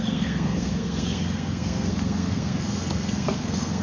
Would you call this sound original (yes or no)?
no